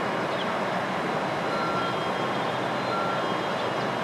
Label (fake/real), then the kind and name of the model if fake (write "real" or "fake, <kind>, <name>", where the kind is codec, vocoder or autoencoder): real